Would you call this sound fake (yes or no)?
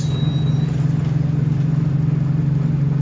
no